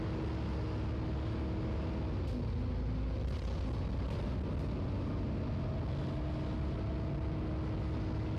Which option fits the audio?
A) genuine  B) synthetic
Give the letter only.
A